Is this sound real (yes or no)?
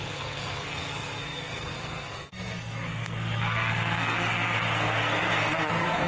no